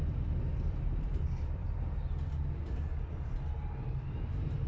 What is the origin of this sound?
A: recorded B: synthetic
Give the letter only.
B